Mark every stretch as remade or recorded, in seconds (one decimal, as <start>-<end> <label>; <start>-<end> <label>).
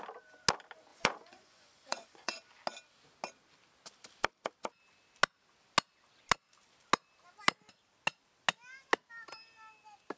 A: 0.0-0.9 recorded; 0.9-2.3 remade; 2.3-10.2 recorded